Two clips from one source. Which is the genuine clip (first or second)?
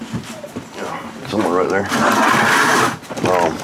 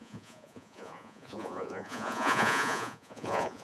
first